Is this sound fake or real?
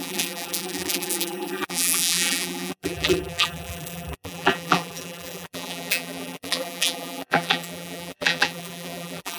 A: fake